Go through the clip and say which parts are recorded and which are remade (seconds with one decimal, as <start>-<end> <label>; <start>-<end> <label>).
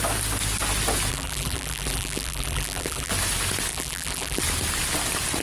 0.0-1.1 recorded; 1.1-3.1 remade; 3.1-3.7 recorded; 3.7-4.4 remade; 4.4-5.4 recorded